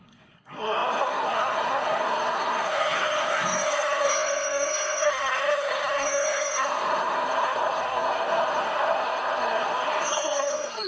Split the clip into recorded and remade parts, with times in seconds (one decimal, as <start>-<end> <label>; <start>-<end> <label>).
0.0-10.9 remade